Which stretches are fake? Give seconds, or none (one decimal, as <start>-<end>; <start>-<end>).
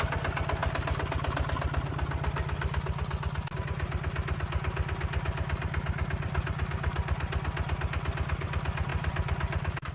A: 8.9-9.9